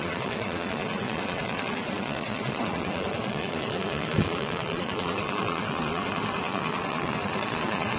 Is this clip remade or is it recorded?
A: remade